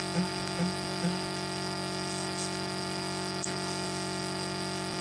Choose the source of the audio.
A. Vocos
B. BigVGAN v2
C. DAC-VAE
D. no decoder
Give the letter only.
C